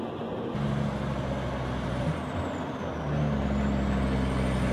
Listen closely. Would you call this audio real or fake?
real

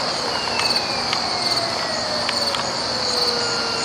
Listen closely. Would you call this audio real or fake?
real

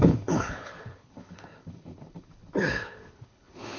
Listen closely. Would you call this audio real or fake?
fake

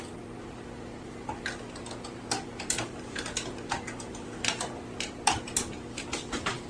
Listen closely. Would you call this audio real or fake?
real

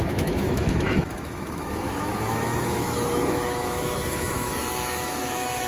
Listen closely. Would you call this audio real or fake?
fake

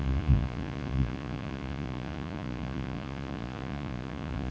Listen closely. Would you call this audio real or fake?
fake